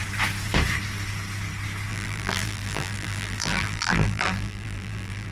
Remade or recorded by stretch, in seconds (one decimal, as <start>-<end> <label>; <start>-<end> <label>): 0.0-1.9 recorded; 1.9-5.3 remade